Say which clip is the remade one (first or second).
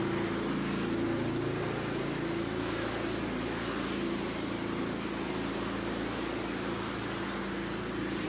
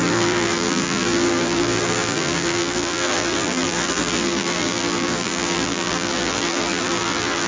second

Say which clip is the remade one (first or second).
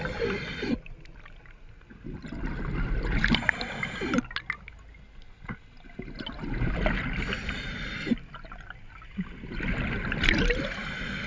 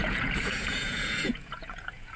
second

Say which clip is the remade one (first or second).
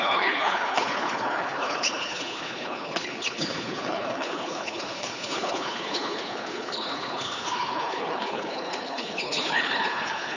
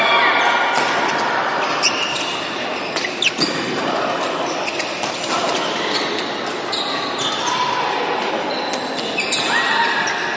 first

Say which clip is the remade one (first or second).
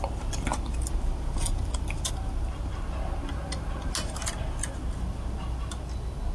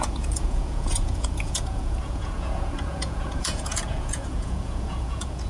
second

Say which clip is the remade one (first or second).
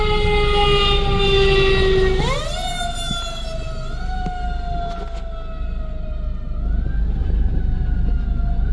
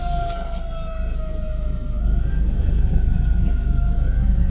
second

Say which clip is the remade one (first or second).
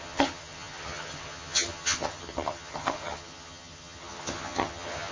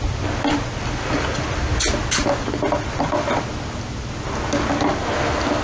first